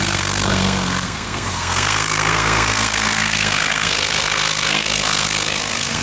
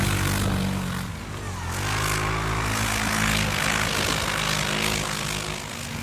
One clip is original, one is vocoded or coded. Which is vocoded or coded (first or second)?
first